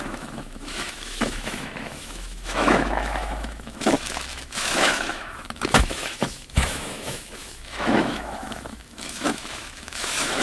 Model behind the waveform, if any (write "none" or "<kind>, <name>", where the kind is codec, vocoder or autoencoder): autoencoder, DAC-VAE